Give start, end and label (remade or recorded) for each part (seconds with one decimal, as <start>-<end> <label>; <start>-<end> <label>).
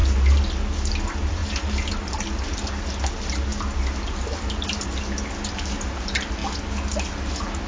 0.0-7.7 recorded